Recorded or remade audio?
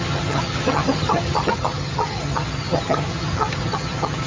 remade